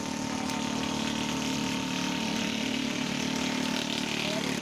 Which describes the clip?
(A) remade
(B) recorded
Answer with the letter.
B